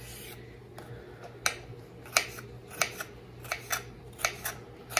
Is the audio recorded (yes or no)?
yes